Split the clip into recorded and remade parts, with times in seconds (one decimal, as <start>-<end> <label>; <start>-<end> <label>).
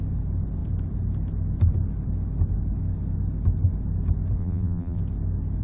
0.0-4.4 recorded; 4.4-5.0 remade; 5.0-5.6 recorded